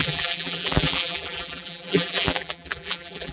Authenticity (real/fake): fake